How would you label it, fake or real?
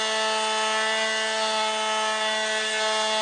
real